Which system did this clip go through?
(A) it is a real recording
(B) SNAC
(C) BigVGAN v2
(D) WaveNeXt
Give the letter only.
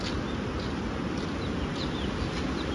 A